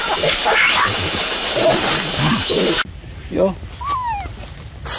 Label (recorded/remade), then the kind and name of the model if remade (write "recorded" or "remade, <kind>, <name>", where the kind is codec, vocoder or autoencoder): recorded